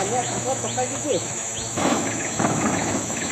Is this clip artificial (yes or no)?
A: yes